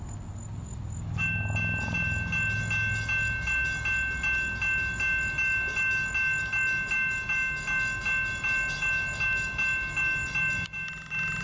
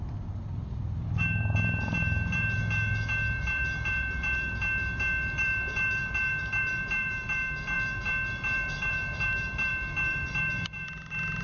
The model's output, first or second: second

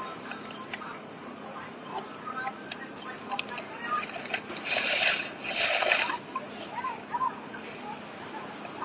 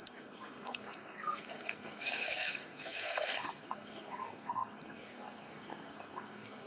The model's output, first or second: second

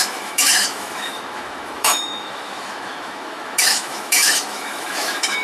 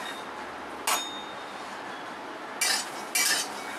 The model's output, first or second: first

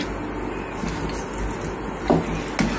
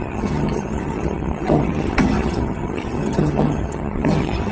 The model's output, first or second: second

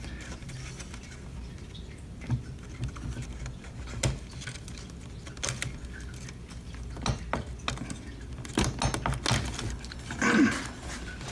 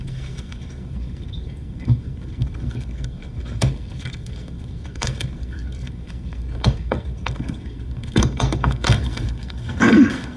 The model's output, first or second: second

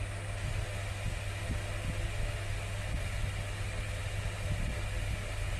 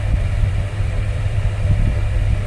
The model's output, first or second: second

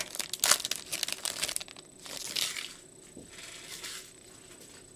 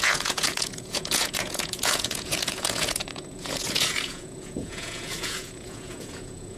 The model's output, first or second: second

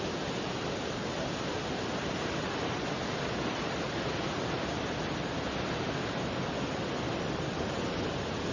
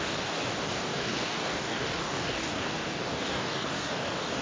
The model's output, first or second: second